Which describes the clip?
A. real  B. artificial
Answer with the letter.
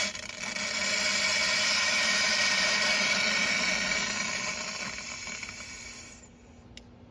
A